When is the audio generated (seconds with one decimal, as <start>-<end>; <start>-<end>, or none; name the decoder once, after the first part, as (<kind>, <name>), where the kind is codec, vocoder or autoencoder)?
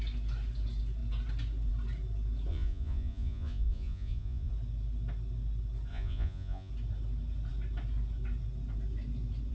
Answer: 2.5-4.5 (vocoder, Vocos); 5.9-6.7